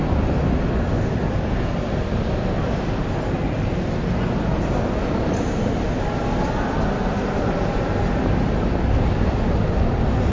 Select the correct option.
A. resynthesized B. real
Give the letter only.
B